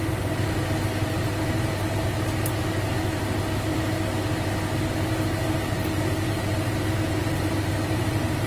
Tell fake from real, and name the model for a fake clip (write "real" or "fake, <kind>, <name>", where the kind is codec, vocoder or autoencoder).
real